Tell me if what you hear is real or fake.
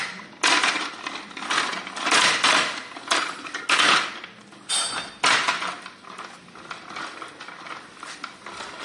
real